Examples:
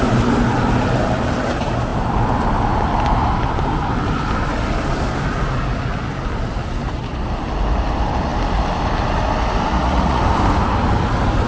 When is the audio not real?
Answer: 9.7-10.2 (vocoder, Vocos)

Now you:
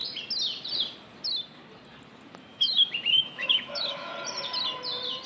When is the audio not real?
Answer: 2.5-4.1 (autoencoder, DAC-VAE)

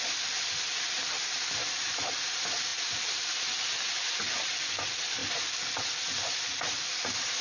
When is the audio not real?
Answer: none